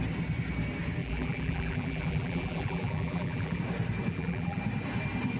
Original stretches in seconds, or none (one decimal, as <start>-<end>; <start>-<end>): 0.0-1.0; 3.6-4.1; 4.6-5.4

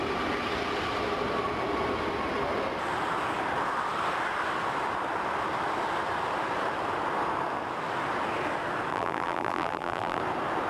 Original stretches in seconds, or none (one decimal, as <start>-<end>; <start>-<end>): 0.0-8.9; 10.2-10.7

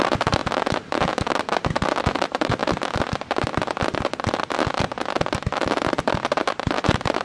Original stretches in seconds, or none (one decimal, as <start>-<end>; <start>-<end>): 0.4-1.1; 2.6-6.0

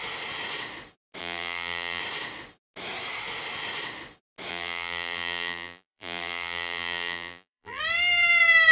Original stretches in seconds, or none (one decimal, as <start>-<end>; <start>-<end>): 0.0-1.2; 2.0-4.5; 7.8-8.7

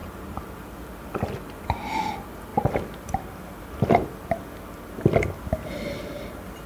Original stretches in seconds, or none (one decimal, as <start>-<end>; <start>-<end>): 0.0-6.7

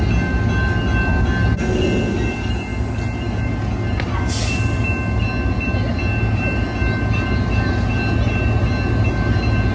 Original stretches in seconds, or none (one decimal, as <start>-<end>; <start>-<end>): 0.0-9.7